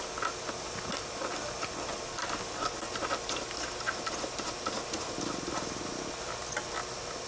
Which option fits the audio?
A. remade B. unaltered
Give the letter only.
B